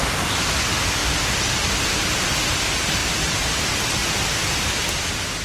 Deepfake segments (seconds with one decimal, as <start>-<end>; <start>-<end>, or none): 1.0-1.7; 3.0-3.6